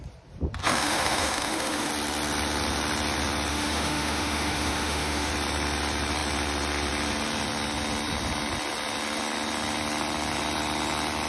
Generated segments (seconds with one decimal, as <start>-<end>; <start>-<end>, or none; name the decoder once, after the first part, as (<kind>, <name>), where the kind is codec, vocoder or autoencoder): 0.6-1.9 (autoencoder, DAC-VAE); 3.5-5.3